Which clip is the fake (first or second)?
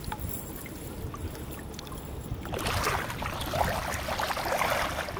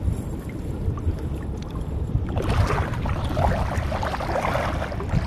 second